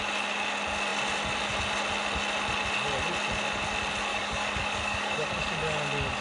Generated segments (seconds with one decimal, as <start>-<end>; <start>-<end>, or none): 4.1-5.3